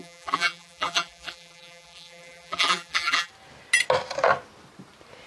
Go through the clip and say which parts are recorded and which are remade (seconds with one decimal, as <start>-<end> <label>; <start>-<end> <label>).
0.0-3.3 remade; 3.3-5.3 recorded